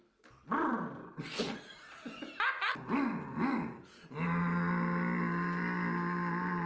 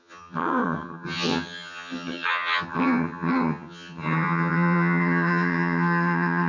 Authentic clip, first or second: first